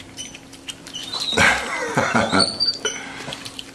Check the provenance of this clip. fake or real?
fake